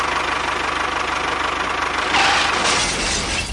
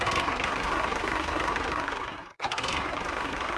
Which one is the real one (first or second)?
first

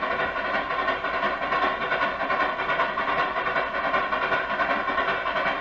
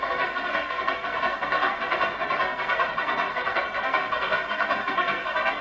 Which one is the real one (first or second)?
first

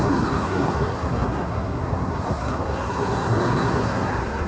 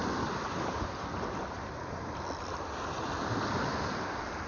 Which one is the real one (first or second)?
second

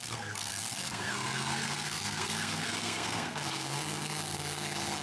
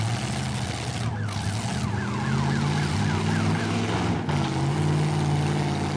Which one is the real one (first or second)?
second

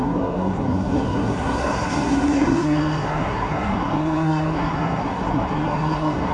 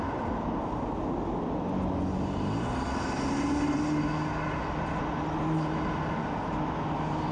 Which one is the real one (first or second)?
second